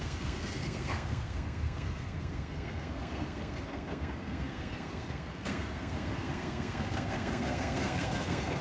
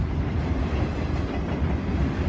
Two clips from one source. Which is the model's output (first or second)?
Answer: first